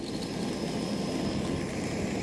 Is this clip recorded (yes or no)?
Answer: yes